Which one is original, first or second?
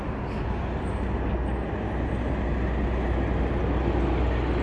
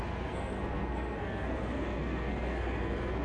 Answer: first